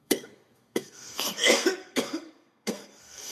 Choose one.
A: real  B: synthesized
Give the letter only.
B